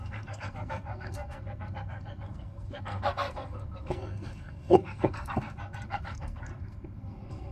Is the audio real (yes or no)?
no